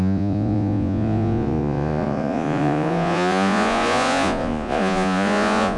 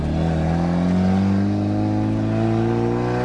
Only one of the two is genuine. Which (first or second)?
second